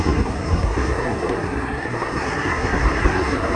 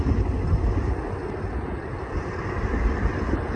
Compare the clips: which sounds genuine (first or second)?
second